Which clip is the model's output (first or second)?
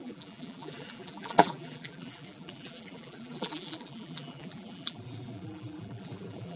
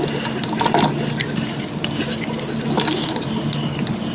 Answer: first